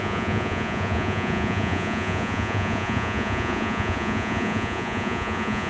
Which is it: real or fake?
fake